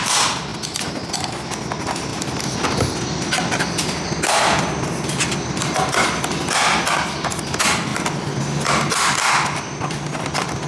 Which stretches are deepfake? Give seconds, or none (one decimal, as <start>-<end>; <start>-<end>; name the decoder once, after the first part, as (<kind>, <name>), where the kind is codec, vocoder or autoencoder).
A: none